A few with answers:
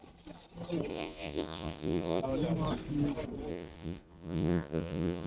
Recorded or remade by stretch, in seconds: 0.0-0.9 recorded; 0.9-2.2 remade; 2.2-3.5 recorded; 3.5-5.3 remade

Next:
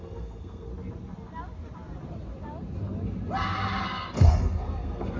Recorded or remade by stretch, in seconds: 0.0-0.7 remade; 0.7-3.8 recorded; 3.8-5.2 remade